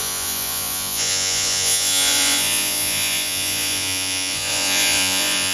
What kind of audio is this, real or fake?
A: fake